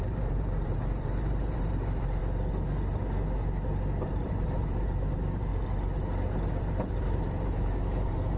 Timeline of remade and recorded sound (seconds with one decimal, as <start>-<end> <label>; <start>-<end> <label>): 0.0-2.2 remade; 2.2-4.0 recorded; 4.0-5.5 remade; 5.5-6.6 recorded; 6.6-8.4 remade

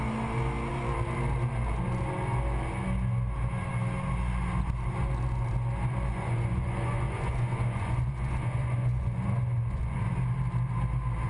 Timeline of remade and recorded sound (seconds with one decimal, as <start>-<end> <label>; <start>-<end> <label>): 0.0-6.1 recorded; 6.1-10.0 remade; 10.0-11.3 recorded